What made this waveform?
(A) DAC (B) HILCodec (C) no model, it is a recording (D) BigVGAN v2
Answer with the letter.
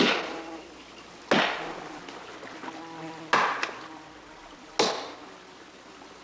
C